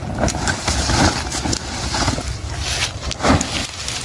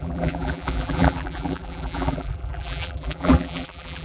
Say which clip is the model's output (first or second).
second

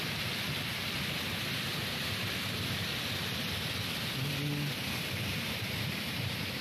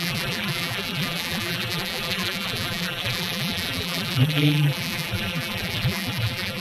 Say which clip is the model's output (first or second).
second